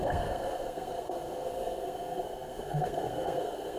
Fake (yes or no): yes